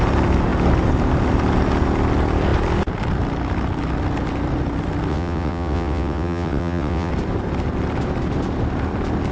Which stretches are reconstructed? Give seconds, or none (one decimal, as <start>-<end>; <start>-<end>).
5.1-7.1